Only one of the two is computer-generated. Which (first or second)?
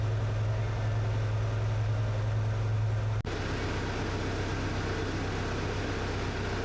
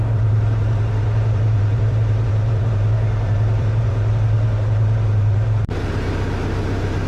second